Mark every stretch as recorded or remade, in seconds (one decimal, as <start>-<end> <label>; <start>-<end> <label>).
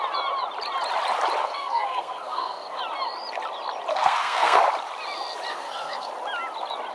0.0-1.4 recorded; 1.4-2.8 remade; 2.8-3.9 recorded; 3.9-4.6 remade; 4.6-5.5 recorded; 5.5-6.1 remade; 6.1-6.9 recorded